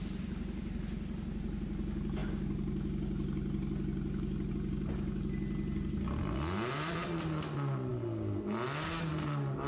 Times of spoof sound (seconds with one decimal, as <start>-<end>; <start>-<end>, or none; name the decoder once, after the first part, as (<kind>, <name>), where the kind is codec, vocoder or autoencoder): none

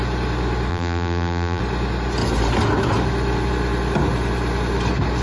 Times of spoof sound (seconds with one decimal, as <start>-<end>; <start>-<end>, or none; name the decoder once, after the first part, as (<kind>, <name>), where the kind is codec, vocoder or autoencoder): 0.7-1.6 (vocoder, BigVGAN v2)

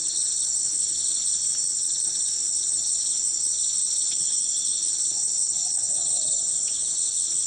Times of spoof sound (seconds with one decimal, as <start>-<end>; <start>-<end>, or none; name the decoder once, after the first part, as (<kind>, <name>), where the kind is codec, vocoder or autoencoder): 0.0-1.3 (codec, HILCodec); 2.0-7.5